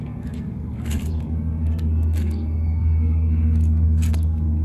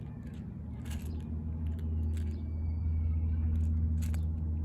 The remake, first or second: first